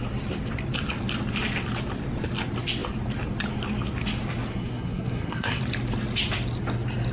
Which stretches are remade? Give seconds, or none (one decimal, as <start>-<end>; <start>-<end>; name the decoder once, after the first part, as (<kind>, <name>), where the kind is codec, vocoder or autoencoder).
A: 4.5-5.6 (codec, SNAC)